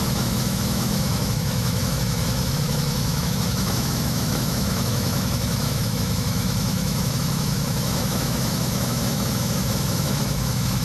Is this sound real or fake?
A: fake